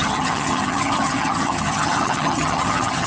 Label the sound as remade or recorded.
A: remade